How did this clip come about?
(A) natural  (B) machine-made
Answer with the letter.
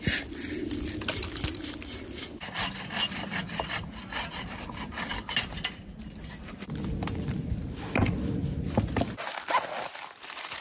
A